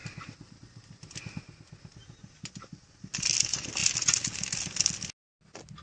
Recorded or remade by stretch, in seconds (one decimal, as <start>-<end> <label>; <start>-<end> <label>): 0.0-5.8 recorded